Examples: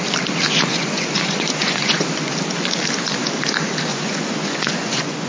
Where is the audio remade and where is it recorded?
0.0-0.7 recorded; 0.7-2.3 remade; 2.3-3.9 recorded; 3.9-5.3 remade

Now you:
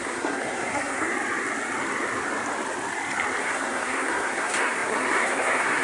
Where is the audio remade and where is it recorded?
0.0-1.1 remade; 1.1-3.4 recorded; 3.4-5.8 remade

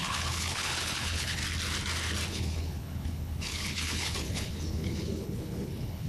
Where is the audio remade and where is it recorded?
0.0-1.4 remade; 1.4-2.3 recorded; 2.3-6.1 remade